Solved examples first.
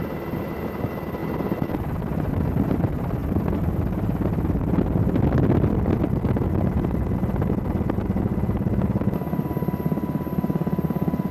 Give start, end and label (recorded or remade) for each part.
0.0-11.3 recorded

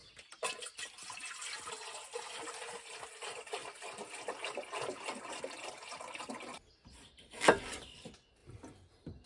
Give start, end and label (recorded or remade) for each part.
0.0-9.3 recorded

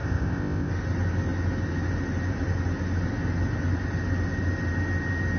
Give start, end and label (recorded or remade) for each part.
0.0-0.7 remade; 0.7-5.4 recorded

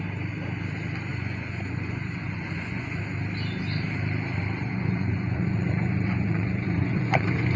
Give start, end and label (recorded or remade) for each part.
0.0-1.1 recorded; 1.1-3.0 remade; 3.0-4.6 recorded; 4.6-7.6 remade

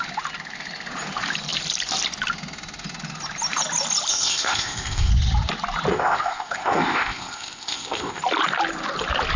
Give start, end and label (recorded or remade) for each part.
0.0-4.1 recorded; 4.1-5.1 remade; 5.1-5.9 recorded; 5.9-8.2 remade; 8.2-9.4 recorded

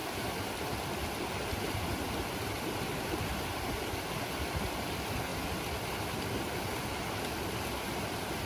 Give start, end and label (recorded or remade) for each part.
0.0-8.5 recorded

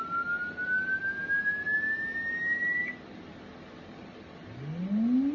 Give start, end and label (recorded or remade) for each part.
0.0-5.3 recorded

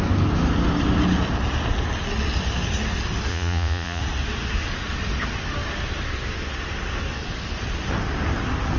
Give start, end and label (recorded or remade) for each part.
0.0-3.3 recorded; 3.3-4.0 remade; 4.0-8.8 recorded